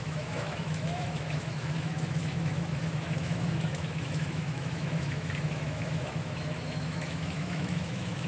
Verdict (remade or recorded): remade